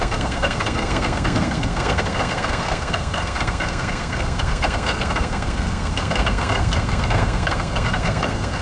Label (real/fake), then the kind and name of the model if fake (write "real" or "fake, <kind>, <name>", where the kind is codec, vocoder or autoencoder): fake, codec, SNAC